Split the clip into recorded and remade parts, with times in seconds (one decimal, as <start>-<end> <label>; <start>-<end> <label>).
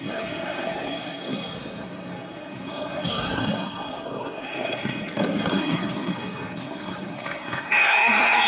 0.0-8.5 remade